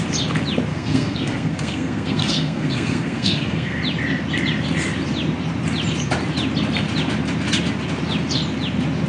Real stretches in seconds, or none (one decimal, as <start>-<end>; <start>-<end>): 0.0-0.7; 3.8-9.1